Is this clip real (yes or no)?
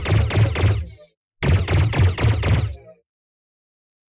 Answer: yes